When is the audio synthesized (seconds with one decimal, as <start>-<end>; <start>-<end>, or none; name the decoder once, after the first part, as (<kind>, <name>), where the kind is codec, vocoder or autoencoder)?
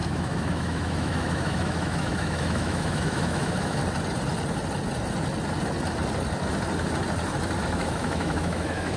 0.0-3.8 (autoencoder, DAC-VAE); 7.6-9.0